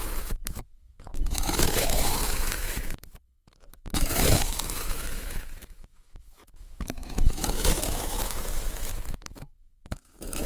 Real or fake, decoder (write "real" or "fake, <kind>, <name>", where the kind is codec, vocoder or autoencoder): fake, autoencoder, DAC-VAE